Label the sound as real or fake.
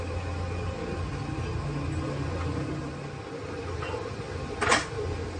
real